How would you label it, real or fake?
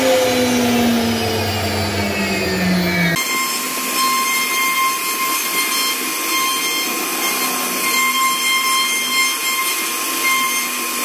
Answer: real